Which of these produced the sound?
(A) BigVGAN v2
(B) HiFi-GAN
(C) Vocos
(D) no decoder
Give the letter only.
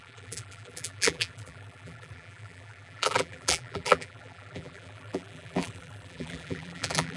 A